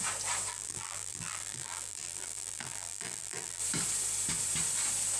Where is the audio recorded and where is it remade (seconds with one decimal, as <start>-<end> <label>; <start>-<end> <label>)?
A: 0.0-0.5 recorded; 0.5-3.6 remade; 3.6-5.2 recorded